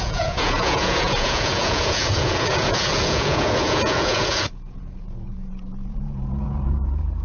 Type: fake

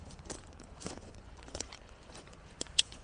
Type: fake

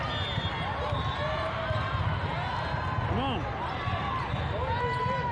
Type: real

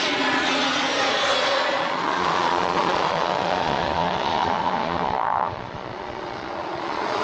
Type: fake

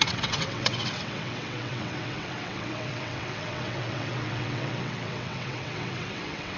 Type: fake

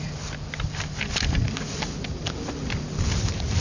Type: real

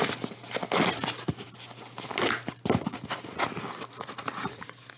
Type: real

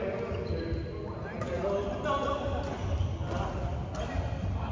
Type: real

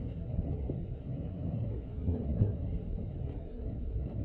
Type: fake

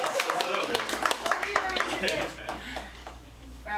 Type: fake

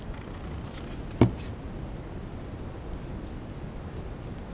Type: real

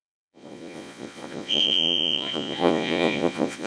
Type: fake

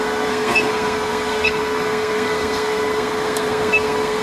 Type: fake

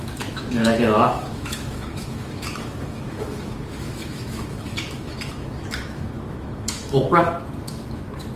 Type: fake